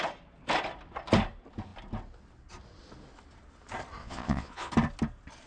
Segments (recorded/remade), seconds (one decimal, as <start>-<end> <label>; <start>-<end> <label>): 0.0-4.0 recorded; 4.0-4.7 remade; 4.7-5.5 recorded